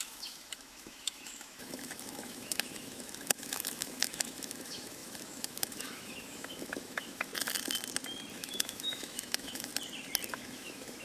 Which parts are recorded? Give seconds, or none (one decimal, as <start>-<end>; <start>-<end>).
7.3-8.3; 9.7-10.3